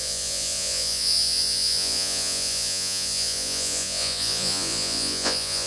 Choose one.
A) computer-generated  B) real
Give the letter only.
A